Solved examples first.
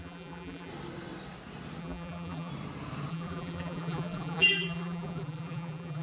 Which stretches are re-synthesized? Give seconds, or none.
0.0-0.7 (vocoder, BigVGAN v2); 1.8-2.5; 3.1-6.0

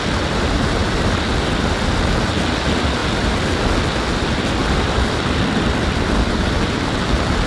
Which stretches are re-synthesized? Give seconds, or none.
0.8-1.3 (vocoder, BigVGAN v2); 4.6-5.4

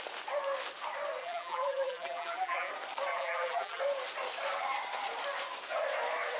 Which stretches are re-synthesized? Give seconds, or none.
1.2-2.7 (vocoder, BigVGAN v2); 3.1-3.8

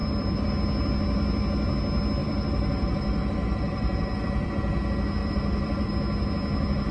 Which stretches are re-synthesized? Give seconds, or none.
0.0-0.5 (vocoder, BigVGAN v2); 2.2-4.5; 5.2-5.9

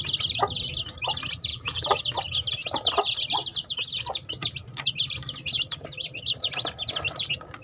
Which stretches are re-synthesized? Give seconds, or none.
1.5-2.0 (vocoder, BigVGAN v2)